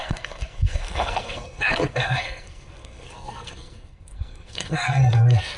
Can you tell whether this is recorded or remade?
remade